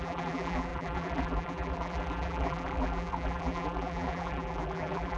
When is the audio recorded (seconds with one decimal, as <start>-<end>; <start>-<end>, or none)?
none